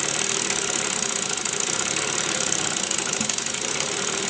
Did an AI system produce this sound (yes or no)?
no